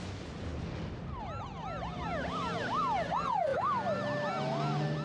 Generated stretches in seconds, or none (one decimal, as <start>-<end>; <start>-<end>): none